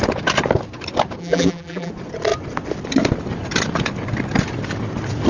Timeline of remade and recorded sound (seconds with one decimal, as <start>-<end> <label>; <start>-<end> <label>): 0.0-1.2 recorded; 1.2-1.9 remade; 1.9-5.3 recorded